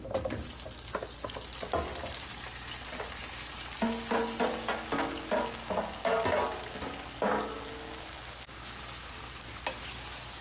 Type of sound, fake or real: real